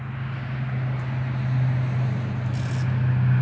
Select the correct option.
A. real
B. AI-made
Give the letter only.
A